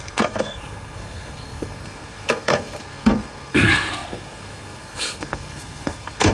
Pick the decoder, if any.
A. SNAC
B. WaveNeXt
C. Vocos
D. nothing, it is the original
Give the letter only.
A